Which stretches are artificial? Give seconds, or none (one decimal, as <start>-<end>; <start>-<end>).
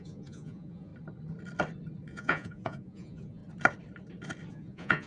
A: 0.0-0.9; 2.1-3.4; 4.5-5.1